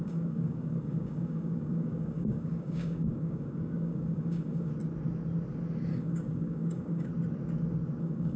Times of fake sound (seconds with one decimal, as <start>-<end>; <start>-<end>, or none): 0.0-4.7; 5.9-7.1; 8.0-8.4